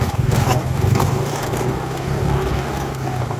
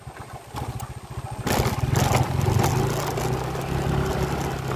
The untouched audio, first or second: second